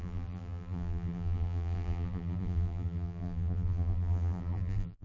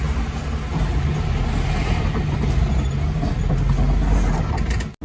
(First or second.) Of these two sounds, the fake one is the first